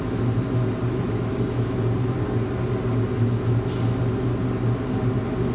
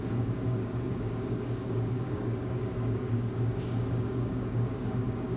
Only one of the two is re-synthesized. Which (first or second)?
second